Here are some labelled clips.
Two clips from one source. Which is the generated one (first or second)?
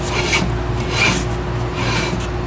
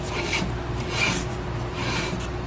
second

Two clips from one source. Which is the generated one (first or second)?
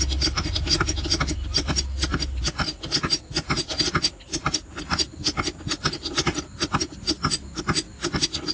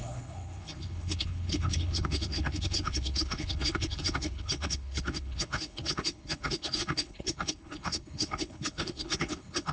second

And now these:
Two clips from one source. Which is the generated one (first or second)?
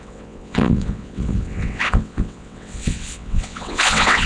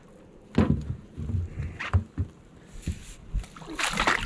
first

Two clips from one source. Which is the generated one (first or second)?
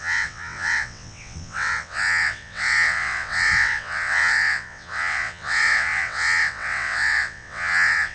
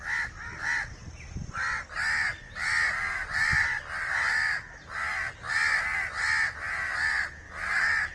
first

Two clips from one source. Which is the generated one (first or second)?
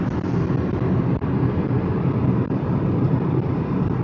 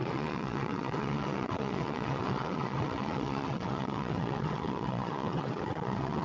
second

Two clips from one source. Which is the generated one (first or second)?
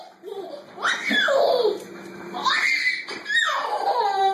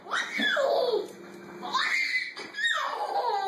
first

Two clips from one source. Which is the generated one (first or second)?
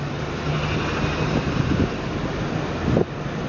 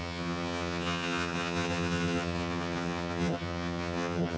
second